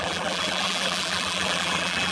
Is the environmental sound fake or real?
fake